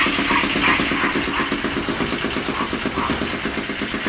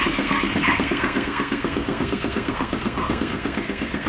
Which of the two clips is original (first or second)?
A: first